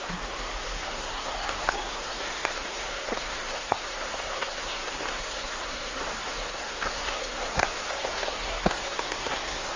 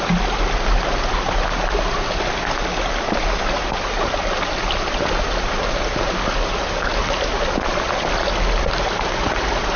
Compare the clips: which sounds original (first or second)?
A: second